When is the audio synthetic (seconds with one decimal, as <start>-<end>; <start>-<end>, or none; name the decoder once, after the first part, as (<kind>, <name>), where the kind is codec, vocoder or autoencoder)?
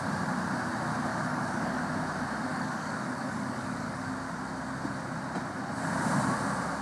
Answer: 1.1-1.8 (codec, DAC); 2.5-4.1